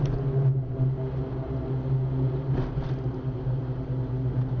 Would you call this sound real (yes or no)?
yes